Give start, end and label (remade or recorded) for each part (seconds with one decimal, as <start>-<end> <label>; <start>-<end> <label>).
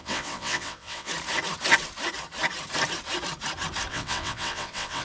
0.0-1.1 remade; 1.1-3.9 recorded; 3.9-5.0 remade